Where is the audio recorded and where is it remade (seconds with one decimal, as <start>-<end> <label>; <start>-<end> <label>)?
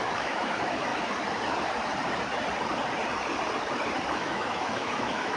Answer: 0.0-0.9 remade; 0.9-4.1 recorded; 4.1-5.4 remade